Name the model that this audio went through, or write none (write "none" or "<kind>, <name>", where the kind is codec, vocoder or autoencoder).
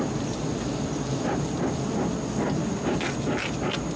none